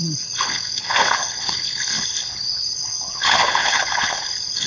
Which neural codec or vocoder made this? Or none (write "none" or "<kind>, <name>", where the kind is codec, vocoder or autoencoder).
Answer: codec, HILCodec